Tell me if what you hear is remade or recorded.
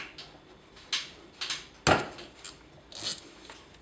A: recorded